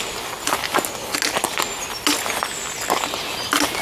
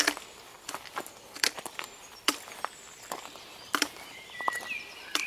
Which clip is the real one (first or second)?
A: first